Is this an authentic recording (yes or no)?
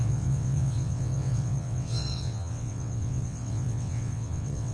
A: no